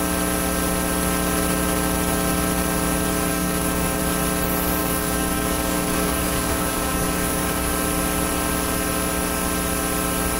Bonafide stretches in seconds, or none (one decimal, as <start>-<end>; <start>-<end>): 0.0-3.3; 4.0-4.8; 7.7-10.4